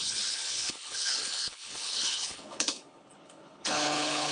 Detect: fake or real fake